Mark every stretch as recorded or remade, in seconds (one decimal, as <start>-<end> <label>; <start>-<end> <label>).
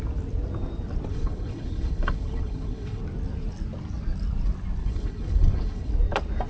0.0-1.1 recorded; 1.1-3.0 remade; 3.0-4.8 recorded; 4.8-5.9 remade; 5.9-6.5 recorded